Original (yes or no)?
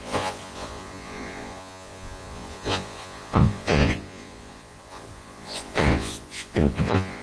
no